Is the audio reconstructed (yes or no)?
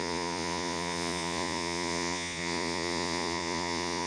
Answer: yes